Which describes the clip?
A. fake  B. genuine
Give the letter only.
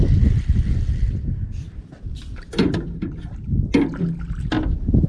B